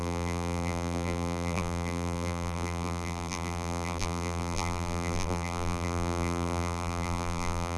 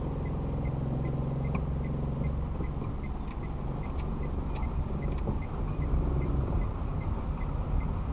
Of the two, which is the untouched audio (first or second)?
second